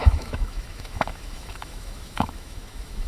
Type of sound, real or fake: fake